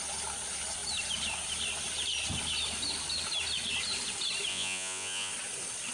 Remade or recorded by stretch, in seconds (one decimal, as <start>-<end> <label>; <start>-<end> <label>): 0.0-4.5 recorded; 4.5-5.3 remade; 5.3-5.9 recorded